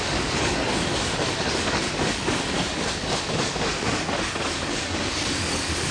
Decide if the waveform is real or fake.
fake